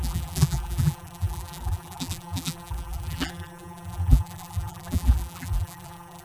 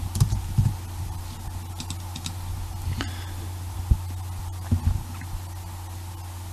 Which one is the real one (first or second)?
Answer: second